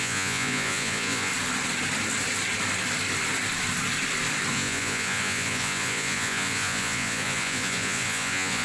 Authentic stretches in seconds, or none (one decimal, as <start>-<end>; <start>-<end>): 1.3-4.5